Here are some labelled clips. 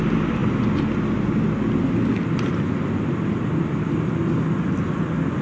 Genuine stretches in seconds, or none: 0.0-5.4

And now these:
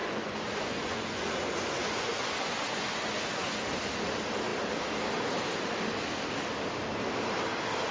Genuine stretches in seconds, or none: 3.6-7.9

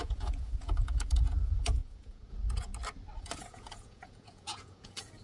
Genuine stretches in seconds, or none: 2.7-3.2

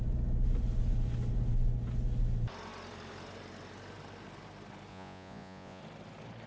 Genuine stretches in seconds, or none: 0.0-4.9; 5.8-6.5

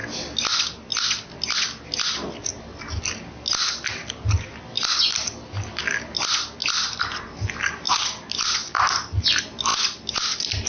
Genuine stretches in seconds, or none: 0.0-10.7